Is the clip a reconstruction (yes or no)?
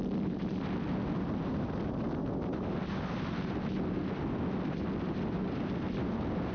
no